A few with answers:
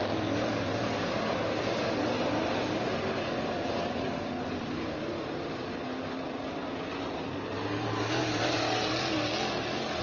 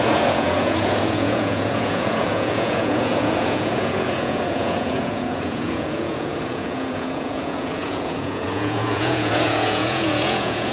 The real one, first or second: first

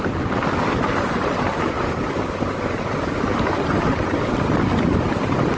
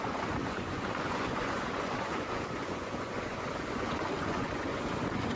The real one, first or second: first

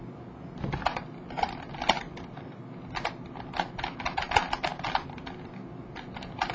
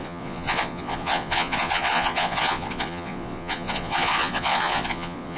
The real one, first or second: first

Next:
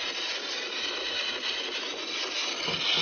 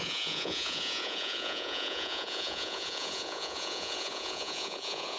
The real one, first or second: first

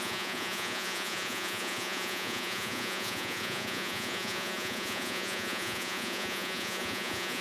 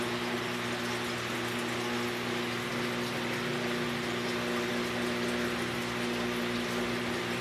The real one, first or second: second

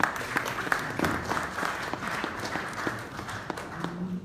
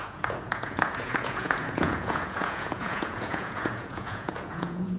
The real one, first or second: first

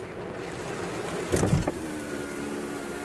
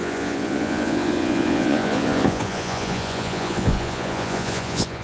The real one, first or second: first